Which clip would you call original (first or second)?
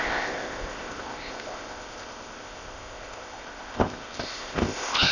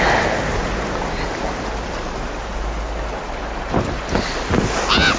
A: second